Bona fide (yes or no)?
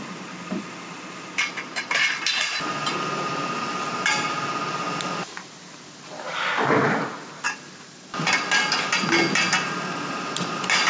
yes